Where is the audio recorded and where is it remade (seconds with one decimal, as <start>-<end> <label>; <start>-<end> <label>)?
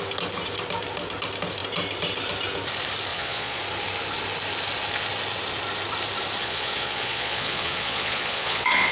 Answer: 0.0-3.1 recorded; 3.1-3.6 remade; 3.6-6.4 recorded; 6.4-8.9 remade